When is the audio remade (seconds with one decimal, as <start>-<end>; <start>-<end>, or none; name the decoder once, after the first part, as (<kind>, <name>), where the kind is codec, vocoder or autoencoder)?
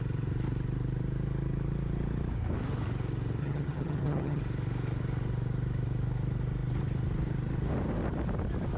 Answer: 3.4-4.4 (vocoder, HiFi-GAN)